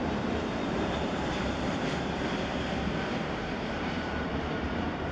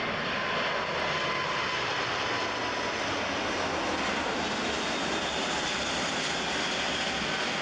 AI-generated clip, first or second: first